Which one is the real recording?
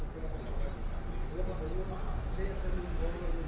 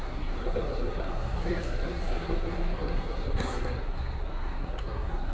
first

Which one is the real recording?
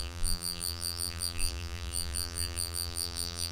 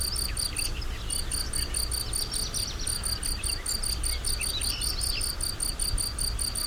second